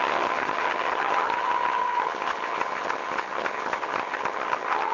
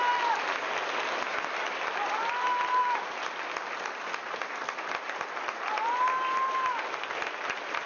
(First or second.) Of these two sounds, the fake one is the first